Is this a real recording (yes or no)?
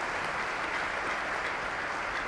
no